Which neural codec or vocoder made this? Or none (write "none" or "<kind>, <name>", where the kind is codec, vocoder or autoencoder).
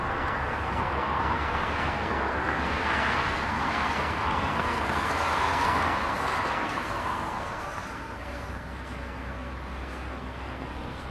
codec, SNAC